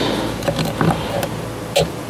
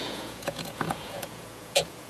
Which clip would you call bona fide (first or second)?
first